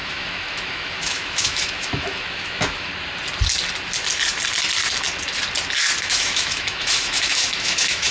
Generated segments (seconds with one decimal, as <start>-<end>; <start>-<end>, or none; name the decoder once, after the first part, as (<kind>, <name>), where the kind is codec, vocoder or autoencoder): 0.0-2.9 (autoencoder, DAC-VAE); 6.0-8.1